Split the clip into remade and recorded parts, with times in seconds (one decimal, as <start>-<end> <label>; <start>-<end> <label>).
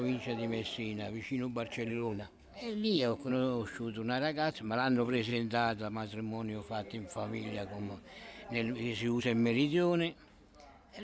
0.0-1.9 recorded; 1.9-3.3 remade; 3.3-11.0 recorded